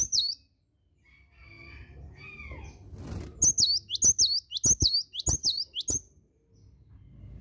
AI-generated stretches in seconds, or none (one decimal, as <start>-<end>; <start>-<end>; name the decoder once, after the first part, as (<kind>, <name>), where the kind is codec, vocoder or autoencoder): none

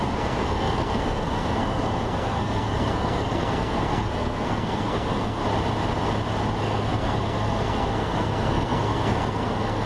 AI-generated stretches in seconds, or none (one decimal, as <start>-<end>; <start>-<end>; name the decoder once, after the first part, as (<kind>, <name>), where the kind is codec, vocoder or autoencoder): 0.0-5.4 (codec, SNAC); 6.6-9.9

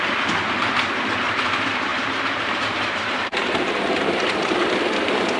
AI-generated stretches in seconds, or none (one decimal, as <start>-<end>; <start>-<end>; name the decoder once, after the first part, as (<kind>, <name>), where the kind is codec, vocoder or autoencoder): 1.9-5.4 (vocoder, BigVGAN v2)